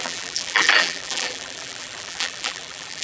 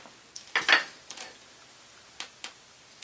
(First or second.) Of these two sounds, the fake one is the first